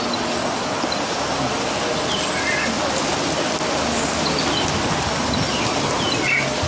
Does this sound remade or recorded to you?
recorded